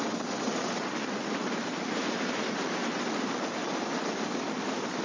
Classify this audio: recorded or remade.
recorded